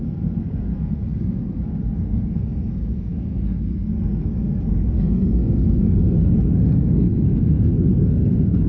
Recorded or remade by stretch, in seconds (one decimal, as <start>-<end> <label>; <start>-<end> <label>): 0.0-8.7 remade